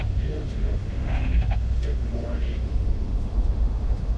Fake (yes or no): yes